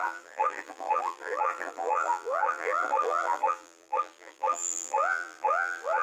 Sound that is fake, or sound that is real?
fake